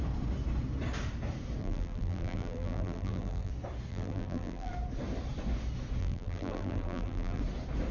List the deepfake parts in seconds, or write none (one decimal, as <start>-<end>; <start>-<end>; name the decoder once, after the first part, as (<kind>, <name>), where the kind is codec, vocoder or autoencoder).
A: 1.6-3.5 (vocoder, BigVGAN v2); 3.9-4.7; 6.0-7.4